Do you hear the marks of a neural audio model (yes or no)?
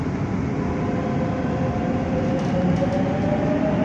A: no